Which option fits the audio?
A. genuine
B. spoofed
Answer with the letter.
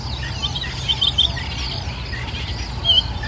A